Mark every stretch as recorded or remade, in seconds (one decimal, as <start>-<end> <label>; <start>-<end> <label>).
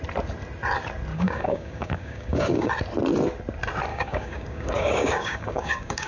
0.0-1.1 recorded; 1.1-2.7 remade; 2.7-3.9 recorded; 3.9-6.1 remade